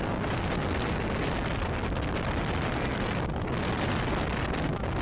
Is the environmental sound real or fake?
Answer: real